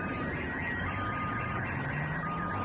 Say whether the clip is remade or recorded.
recorded